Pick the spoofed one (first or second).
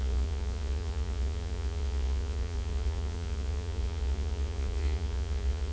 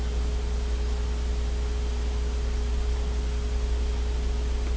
first